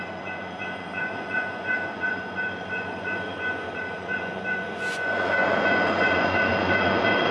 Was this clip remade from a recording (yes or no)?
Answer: yes